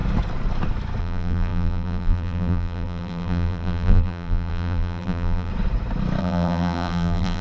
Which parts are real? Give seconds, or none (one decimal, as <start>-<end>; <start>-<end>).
0.0-1.0; 5.5-6.2